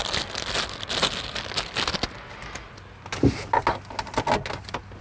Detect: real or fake real